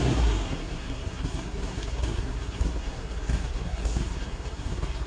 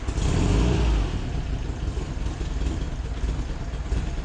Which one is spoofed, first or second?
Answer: first